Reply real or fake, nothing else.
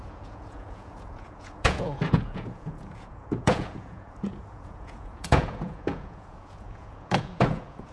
fake